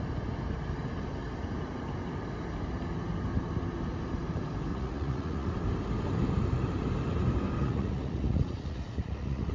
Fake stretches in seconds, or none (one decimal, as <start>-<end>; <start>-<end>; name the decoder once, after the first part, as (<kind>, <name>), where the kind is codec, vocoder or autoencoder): 4.7-5.5 (vocoder, Vocos); 7.6-9.5